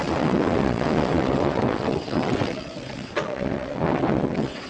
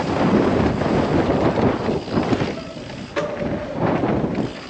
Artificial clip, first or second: first